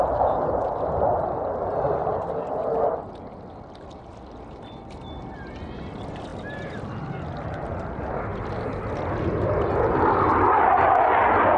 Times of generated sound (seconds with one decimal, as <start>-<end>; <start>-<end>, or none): none